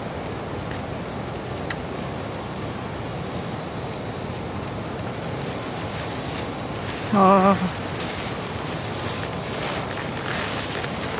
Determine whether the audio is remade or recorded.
recorded